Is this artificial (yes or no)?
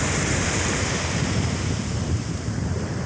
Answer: yes